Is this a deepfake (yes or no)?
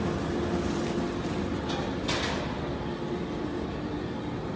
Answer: no